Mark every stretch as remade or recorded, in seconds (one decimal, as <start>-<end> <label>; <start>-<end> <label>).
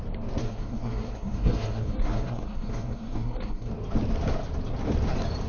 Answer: 0.0-0.4 recorded; 0.4-3.7 remade; 3.7-5.5 recorded